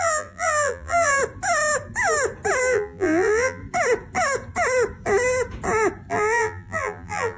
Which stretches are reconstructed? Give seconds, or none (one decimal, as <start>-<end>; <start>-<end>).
0.0-1.2; 2.6-3.6; 6.1-7.4